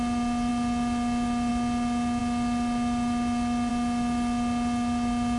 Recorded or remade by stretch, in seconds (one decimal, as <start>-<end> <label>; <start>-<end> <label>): 0.0-5.4 recorded